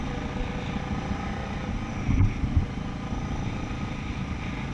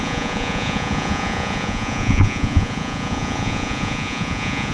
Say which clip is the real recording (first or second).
first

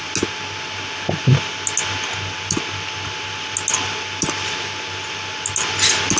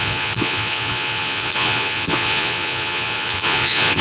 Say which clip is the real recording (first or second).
first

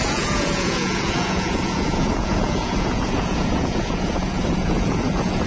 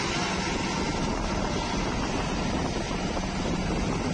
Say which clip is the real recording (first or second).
second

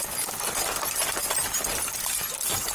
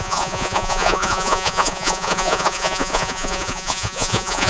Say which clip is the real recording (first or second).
first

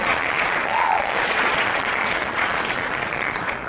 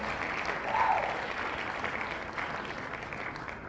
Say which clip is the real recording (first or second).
second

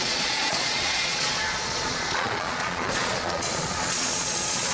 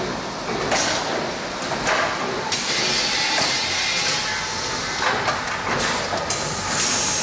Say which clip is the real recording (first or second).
second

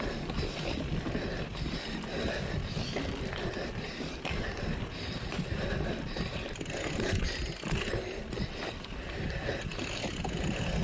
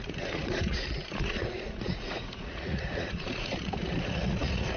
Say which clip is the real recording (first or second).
first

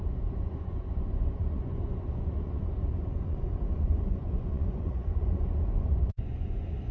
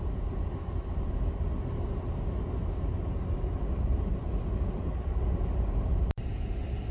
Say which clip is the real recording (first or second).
second